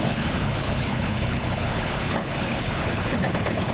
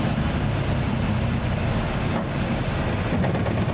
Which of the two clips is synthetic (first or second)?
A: first